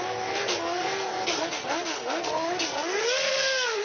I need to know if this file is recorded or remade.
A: remade